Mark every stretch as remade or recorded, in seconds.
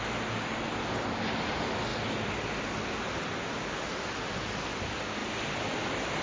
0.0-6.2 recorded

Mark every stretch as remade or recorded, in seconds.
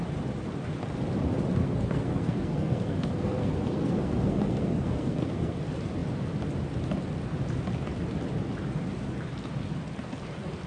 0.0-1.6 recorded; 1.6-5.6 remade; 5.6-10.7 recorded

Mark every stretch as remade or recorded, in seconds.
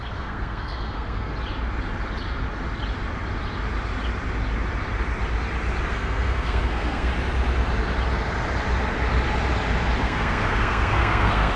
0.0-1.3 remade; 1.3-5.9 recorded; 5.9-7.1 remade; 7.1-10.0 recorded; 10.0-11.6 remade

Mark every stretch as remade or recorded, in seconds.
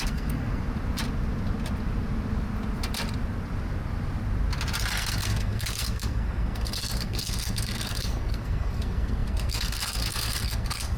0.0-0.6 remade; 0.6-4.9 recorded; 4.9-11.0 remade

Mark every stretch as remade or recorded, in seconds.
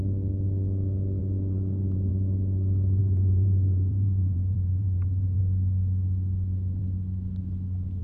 0.0-1.2 recorded; 1.2-2.1 remade; 2.1-3.0 recorded; 3.0-5.4 remade; 5.4-8.0 recorded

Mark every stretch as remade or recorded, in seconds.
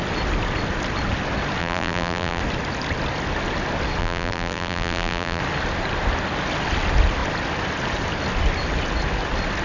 0.0-1.6 recorded; 1.6-2.4 remade; 2.4-4.0 recorded; 4.0-5.4 remade; 5.4-9.6 recorded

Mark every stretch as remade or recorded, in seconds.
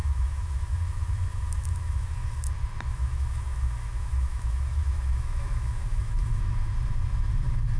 0.0-2.5 remade; 2.5-2.9 recorded; 2.9-6.4 remade; 6.4-7.8 recorded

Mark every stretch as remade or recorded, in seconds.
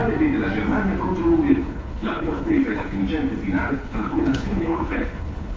0.0-1.5 recorded; 1.5-3.0 remade; 3.0-3.7 recorded; 3.7-5.6 remade